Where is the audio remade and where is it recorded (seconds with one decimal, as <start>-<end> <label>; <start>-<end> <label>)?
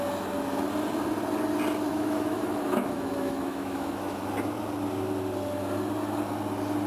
0.0-1.9 recorded; 1.9-4.2 remade; 4.2-6.9 recorded